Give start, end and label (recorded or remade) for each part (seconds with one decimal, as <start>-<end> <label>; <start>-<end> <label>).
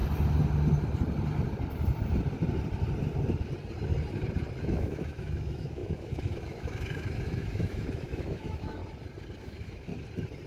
0.0-4.6 recorded; 4.6-8.8 remade; 8.8-9.4 recorded; 9.4-9.9 remade; 9.9-10.5 recorded